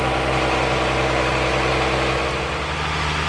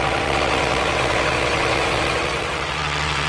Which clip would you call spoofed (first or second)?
second